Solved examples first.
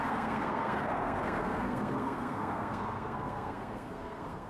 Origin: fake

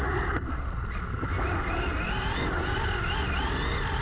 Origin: real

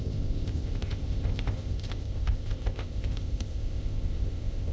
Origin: fake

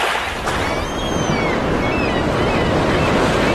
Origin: real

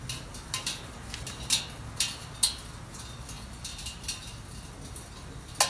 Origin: real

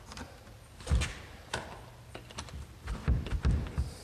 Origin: real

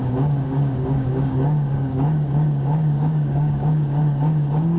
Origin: fake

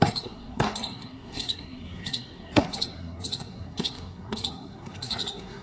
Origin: fake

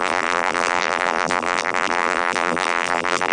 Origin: fake